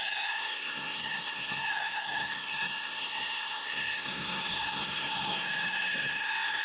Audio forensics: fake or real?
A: fake